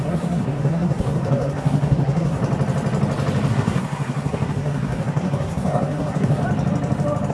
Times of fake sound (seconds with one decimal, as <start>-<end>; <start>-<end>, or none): 0.0-2.4; 3.5-6.4